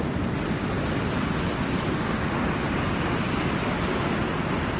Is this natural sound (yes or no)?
yes